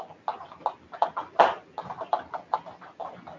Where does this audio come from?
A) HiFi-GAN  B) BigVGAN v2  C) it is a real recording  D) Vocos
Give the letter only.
C